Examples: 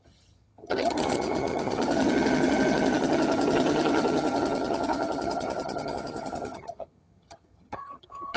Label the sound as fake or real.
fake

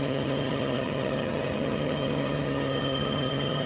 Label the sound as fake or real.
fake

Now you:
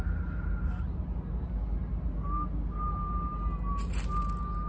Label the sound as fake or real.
real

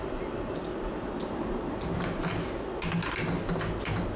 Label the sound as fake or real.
real